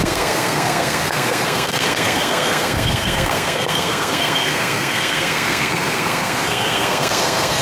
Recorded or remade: remade